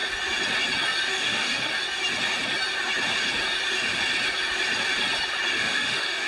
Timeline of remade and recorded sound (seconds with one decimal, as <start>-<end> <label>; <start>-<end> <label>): 0.0-1.1 recorded; 1.1-1.7 remade; 1.7-5.5 recorded; 5.5-6.3 remade